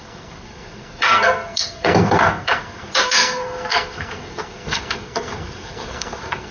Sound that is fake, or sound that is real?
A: fake